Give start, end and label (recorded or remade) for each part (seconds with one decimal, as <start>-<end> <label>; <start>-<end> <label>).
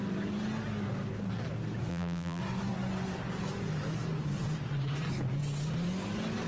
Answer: 0.0-1.9 recorded; 1.9-2.4 remade; 2.4-6.5 recorded